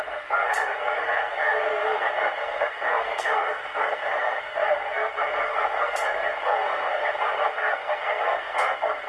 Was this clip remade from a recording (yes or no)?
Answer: yes